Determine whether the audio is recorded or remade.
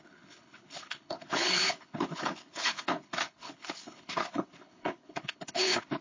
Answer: remade